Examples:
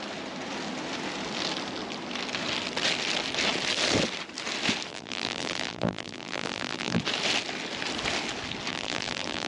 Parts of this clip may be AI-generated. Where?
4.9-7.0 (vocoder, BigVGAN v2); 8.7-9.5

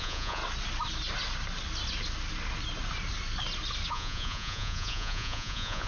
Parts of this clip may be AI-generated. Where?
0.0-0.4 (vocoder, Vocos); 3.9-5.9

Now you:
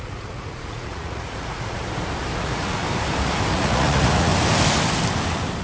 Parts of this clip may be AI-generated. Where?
0.0-1.8 (vocoder, Vocos); 2.4-2.8; 3.5-4.3